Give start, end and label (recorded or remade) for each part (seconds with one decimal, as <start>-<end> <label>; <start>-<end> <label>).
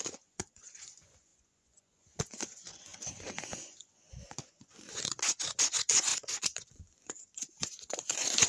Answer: 0.0-8.5 remade